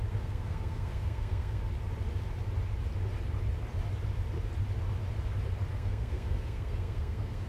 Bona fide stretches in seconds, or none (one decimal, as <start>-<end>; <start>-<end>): 1.6-5.7